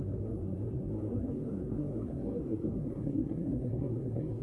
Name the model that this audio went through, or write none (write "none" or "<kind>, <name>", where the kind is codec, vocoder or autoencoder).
codec, SNAC